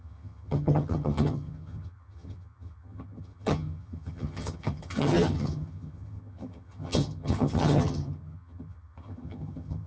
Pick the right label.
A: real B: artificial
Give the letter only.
B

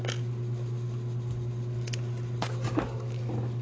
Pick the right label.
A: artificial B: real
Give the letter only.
B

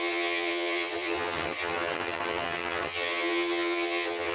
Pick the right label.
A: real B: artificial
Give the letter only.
B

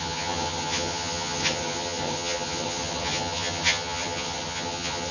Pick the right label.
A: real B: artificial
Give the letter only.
B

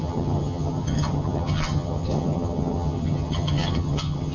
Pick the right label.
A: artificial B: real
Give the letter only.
A